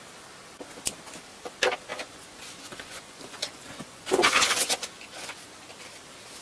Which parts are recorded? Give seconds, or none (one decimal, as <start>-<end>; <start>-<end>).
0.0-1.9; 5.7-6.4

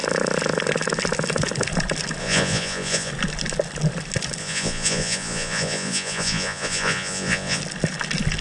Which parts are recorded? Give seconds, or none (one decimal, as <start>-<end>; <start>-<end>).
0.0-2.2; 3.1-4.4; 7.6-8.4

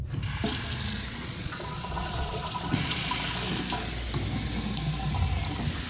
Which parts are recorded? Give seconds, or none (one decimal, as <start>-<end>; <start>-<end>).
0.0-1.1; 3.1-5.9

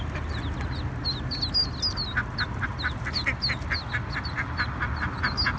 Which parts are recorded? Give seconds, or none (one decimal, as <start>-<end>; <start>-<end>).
0.0-5.6

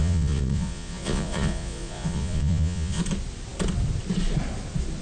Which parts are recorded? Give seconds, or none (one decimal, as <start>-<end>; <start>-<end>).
3.0-5.0

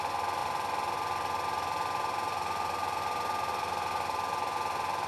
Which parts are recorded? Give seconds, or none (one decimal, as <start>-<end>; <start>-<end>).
0.0-5.1